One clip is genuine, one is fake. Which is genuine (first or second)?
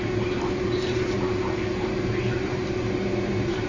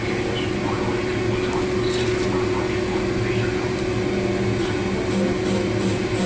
second